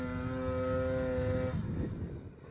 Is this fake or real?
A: real